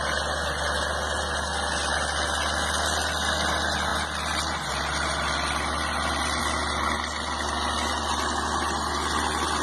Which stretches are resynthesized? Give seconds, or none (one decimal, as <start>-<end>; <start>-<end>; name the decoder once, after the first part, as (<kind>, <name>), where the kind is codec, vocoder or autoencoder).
none